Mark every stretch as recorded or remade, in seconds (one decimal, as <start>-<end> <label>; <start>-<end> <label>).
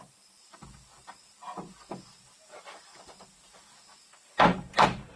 0.0-5.2 recorded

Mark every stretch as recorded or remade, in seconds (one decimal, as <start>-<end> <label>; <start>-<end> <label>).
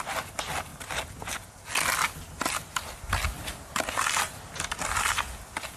0.0-5.8 recorded